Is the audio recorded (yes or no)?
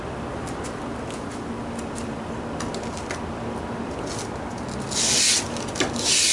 yes